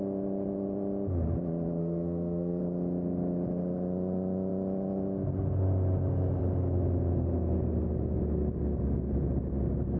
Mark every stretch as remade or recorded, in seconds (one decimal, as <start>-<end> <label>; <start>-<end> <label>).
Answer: 0.0-1.8 recorded; 1.8-2.6 remade; 2.6-10.0 recorded